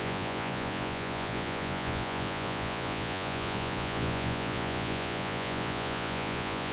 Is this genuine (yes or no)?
no